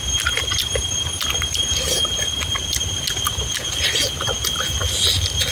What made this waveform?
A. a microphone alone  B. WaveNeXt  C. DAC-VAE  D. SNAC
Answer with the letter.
A